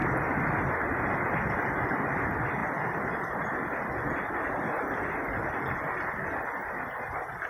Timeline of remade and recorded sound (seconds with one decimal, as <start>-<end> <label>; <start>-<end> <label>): 0.0-7.5 recorded